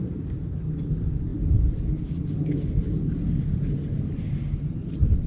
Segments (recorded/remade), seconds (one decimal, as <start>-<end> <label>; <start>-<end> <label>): 0.0-5.3 recorded